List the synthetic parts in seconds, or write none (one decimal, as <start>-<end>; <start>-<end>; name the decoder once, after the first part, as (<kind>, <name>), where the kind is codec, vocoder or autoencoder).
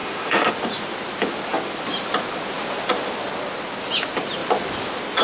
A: 0.0-0.5 (autoencoder, DAC-VAE)